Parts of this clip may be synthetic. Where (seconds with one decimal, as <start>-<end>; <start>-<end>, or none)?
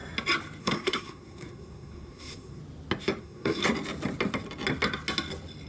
0.6-2.6; 3.2-3.6